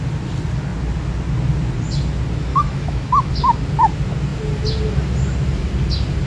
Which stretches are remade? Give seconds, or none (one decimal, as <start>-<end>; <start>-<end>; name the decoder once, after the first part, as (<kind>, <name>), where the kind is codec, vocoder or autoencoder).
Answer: 2.5-3.3 (autoencoder, DAC-VAE)